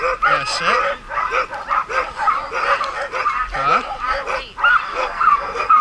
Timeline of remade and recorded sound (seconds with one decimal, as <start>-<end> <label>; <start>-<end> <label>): 0.0-4.9 recorded; 4.9-5.8 remade